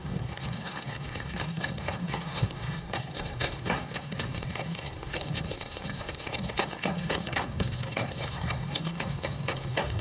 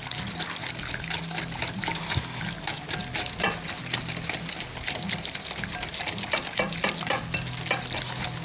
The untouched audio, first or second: second